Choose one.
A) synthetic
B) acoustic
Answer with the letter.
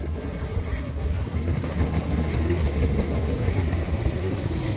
A